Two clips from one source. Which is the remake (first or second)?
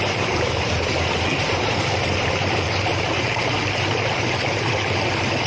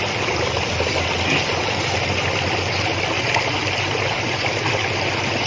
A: first